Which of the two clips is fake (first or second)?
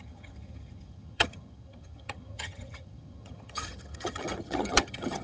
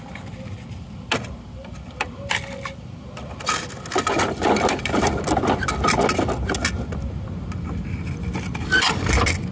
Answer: first